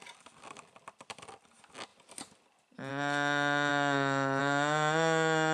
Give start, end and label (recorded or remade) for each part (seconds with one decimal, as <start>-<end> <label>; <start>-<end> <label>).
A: 0.0-5.5 recorded